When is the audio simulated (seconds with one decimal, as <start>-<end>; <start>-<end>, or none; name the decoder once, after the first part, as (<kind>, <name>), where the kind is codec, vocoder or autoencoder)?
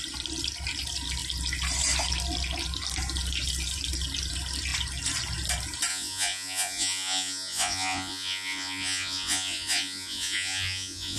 5.9-11.2 (vocoder, Vocos)